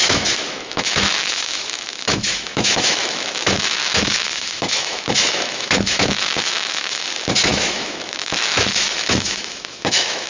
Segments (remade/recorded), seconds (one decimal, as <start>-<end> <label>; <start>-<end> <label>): 0.0-10.3 remade